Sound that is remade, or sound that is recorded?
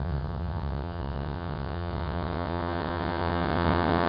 remade